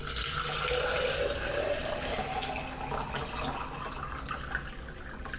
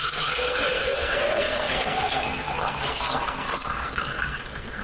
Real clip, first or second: first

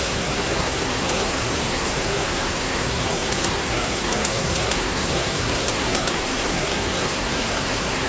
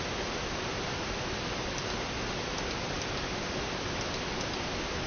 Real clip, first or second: second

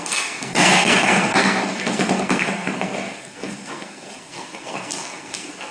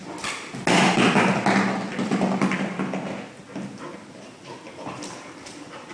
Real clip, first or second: second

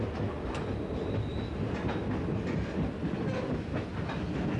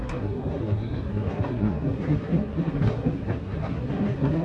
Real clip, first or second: first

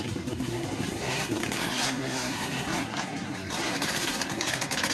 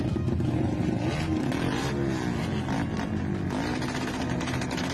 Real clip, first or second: second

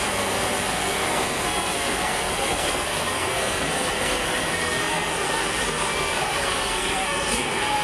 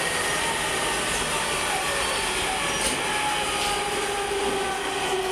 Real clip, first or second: second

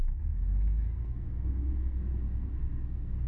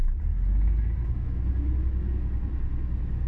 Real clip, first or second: second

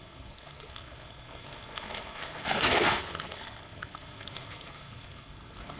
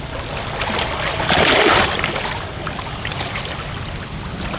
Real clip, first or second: second